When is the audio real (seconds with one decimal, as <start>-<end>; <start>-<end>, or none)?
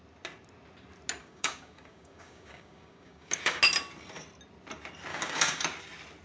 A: 0.0-1.2; 3.6-5.1; 5.6-6.2